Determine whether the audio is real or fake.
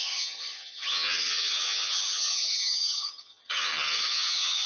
fake